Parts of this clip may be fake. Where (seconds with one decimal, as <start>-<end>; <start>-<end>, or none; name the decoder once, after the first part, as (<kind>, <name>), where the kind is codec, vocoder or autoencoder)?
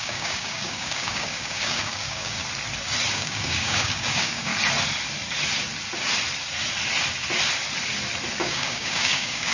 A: 0.0-2.4 (codec, DAC); 3.1-4.5; 8.4-9.5